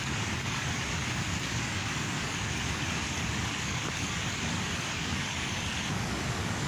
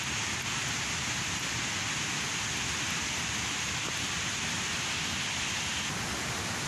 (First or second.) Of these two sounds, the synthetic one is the first